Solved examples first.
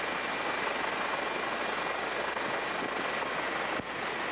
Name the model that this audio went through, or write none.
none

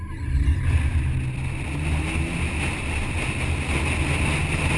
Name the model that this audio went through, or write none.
none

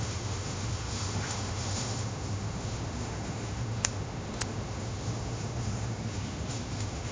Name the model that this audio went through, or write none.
autoencoder, DAC-VAE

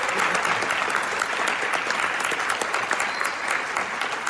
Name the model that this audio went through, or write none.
none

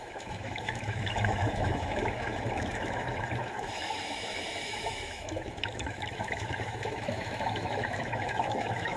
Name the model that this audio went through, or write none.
autoencoder, DAC-VAE